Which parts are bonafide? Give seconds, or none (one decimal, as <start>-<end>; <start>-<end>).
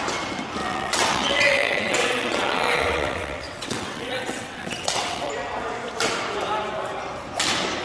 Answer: 0.0-0.6; 5.3-7.8